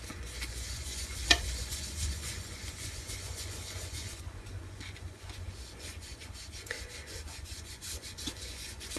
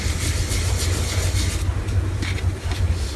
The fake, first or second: first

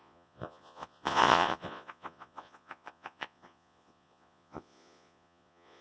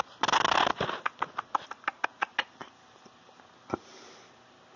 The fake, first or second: first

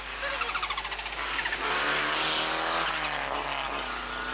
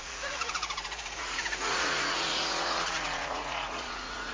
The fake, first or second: second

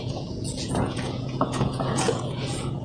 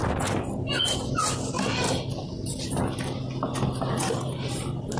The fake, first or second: first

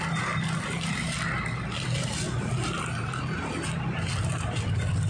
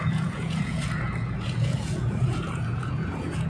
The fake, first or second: second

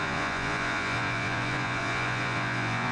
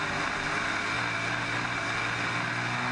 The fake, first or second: first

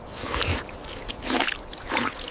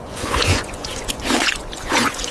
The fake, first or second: second